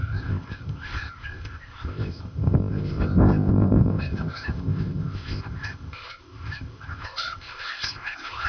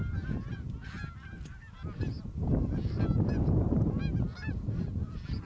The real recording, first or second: second